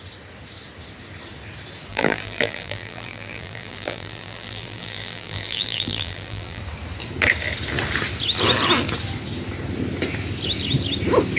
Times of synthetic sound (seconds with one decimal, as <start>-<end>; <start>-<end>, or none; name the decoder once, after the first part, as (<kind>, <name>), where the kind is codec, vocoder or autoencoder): 1.9-6.6 (vocoder, BigVGAN v2)